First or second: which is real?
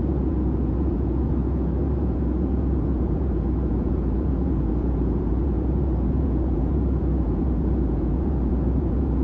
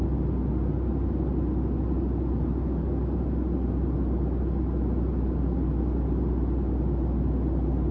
second